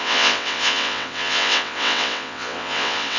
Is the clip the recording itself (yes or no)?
no